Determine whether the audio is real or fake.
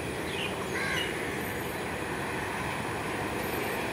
fake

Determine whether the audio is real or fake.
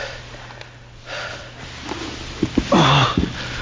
real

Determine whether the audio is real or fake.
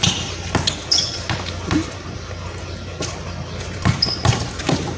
real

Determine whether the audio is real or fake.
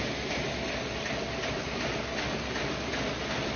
real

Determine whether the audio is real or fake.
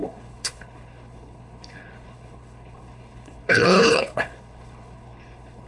fake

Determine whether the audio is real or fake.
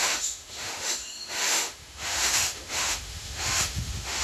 fake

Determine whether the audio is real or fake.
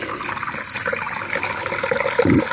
real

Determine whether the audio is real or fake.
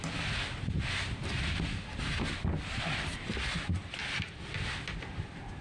real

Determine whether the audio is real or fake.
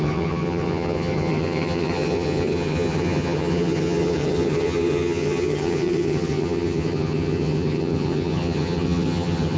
fake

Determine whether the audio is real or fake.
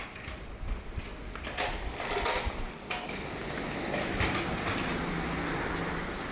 real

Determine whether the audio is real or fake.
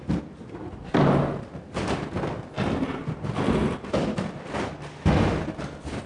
real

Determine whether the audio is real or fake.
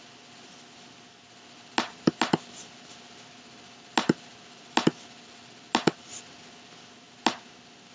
real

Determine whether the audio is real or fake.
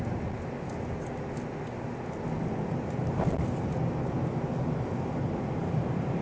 real